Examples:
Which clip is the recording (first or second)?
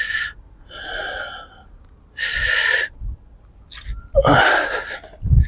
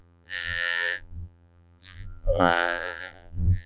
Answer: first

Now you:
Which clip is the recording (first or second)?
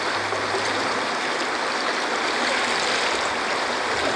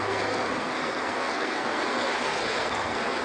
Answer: first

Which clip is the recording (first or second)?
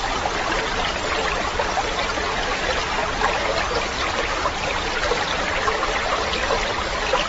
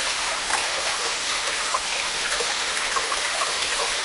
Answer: first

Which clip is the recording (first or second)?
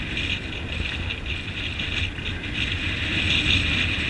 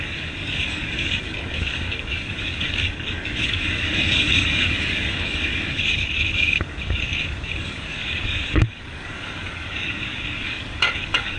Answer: first